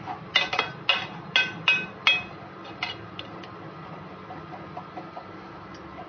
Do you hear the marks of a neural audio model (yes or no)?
no